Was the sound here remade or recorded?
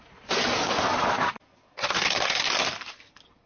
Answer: recorded